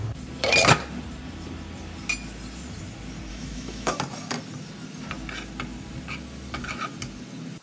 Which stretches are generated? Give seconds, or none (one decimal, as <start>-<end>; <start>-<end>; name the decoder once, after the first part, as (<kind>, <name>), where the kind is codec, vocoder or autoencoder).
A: 3.3-4.0 (autoencoder, DAC-VAE)

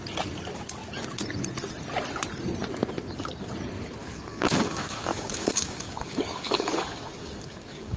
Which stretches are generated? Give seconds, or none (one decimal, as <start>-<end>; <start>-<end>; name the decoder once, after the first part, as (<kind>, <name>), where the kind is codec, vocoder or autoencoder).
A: 4.0-8.0 (codec, DAC)

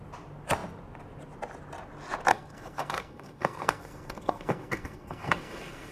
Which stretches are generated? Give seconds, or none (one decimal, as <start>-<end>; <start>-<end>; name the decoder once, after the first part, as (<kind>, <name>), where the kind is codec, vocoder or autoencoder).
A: 2.3-5.9 (codec, SNAC)

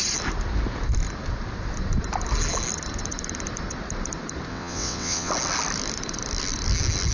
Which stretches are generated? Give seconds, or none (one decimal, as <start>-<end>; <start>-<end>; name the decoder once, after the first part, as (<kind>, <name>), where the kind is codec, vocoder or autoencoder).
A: 4.5-5.3 (vocoder, WaveNeXt)